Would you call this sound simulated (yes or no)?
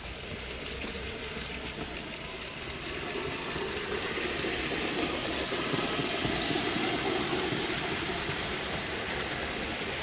yes